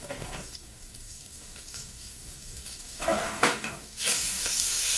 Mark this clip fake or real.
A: fake